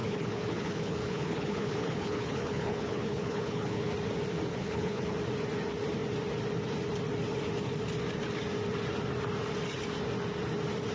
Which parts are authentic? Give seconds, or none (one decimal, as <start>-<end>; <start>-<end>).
3.9-4.5; 5.1-10.9